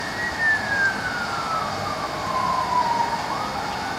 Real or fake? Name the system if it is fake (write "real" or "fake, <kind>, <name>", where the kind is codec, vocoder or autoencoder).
real